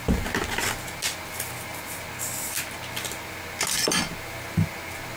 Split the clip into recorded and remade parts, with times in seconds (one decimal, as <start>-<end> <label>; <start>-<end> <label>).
0.0-5.2 recorded